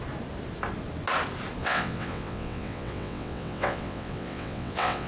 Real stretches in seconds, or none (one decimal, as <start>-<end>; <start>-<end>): 0.0-1.6